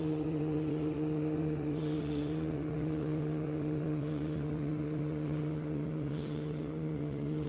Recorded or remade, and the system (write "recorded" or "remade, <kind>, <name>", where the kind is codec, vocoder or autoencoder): remade, vocoder, WaveNeXt